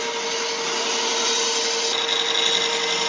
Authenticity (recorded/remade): recorded